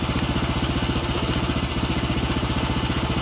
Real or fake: real